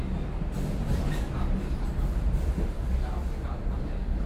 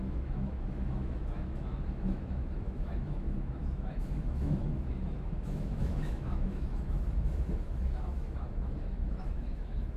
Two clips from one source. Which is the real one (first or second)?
first